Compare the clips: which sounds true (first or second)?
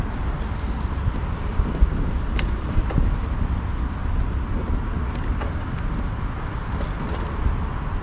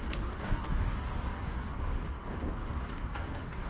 first